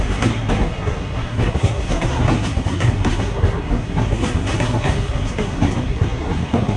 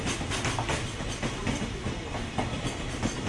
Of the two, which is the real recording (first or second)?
second